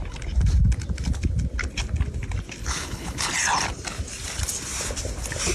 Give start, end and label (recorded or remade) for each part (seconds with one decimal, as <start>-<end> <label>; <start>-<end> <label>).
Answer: 0.0-2.6 recorded; 2.6-3.3 remade; 3.3-5.5 recorded